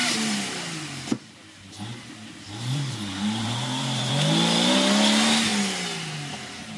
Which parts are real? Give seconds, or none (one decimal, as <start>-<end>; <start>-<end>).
4.1-6.8